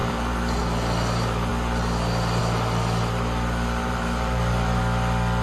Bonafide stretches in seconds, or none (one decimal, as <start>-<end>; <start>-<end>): 0.6-3.8; 4.8-5.4